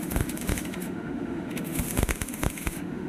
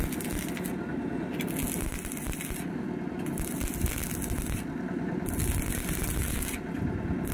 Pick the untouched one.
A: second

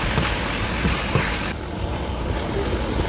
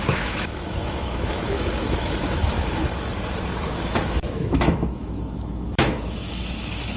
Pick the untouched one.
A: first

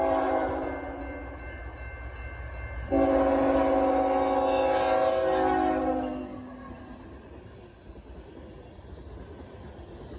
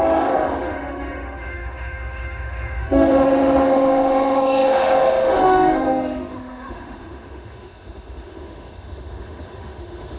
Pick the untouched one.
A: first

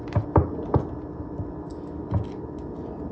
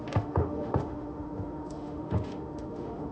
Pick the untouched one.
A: first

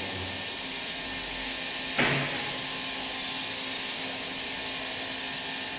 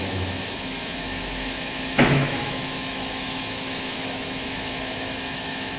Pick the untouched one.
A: first